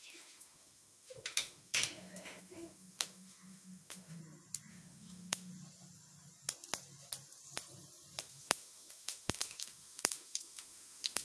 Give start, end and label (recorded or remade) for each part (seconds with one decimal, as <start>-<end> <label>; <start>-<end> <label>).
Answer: 0.0-4.2 remade; 4.2-4.7 recorded; 4.7-5.5 remade; 5.5-8.2 recorded; 8.2-11.2 remade